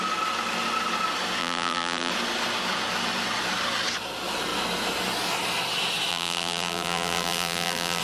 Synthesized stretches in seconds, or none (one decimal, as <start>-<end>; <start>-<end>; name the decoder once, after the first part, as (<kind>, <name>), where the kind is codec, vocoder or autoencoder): 1.4-2.1 (vocoder, BigVGAN v2); 6.1-8.0